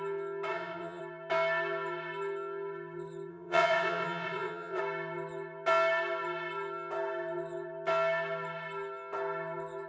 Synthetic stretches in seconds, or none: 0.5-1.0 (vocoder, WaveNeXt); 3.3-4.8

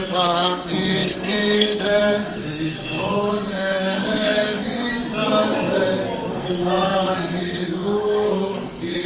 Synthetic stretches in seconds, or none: 0.0-4.9 (codec, SNAC); 6.3-9.1